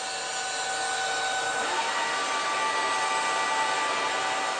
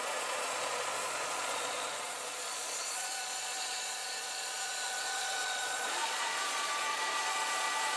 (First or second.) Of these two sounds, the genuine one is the first